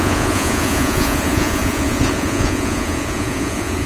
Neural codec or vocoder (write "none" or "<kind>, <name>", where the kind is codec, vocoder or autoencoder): vocoder, Vocos